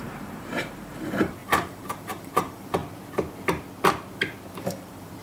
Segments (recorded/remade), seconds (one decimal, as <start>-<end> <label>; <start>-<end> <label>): 0.0-2.8 remade; 2.8-4.6 recorded; 4.6-5.2 remade